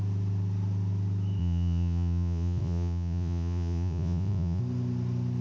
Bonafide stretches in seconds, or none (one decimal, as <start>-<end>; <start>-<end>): 0.0-1.4; 4.6-5.4